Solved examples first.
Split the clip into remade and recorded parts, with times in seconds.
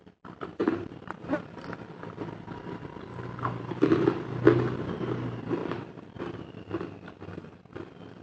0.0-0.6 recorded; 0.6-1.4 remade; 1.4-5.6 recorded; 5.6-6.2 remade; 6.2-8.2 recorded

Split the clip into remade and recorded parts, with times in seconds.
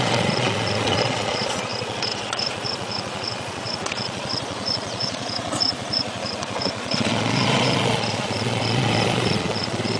0.0-10.0 remade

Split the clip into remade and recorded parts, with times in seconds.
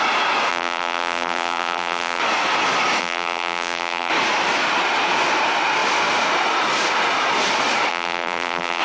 0.0-0.5 recorded; 0.5-2.2 remade; 2.2-3.0 recorded; 3.0-4.1 remade; 4.1-7.9 recorded; 7.9-8.8 remade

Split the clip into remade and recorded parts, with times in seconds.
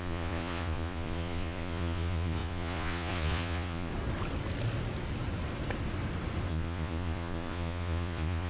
0.0-3.9 remade; 3.9-6.5 recorded; 6.5-8.5 remade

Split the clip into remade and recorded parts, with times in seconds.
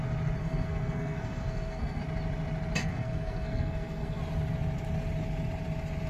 0.0-0.4 recorded; 0.4-2.0 remade; 2.0-2.8 recorded; 2.8-4.2 remade; 4.2-6.1 recorded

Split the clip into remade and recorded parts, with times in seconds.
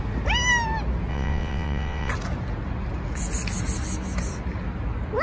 0.0-1.1 recorded; 1.1-2.1 remade; 2.1-5.2 recorded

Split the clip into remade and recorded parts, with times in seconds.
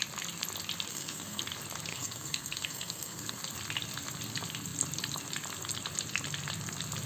0.0-0.9 recorded; 0.9-1.4 remade; 1.4-1.9 recorded; 1.9-3.4 remade; 3.4-7.1 recorded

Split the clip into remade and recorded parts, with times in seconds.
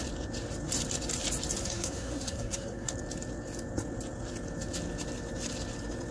0.0-1.6 recorded; 1.6-2.9 remade; 2.9-6.1 recorded